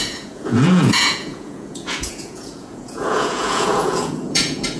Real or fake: fake